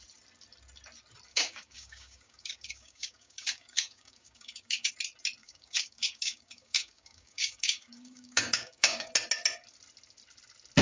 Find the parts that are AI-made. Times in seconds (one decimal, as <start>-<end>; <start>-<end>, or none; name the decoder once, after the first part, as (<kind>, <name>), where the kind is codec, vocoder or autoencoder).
1.3-4.9 (codec, DAC); 5.4-9.1